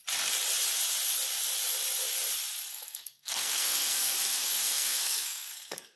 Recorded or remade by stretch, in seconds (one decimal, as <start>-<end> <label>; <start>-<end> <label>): 0.0-2.7 recorded; 2.7-6.0 remade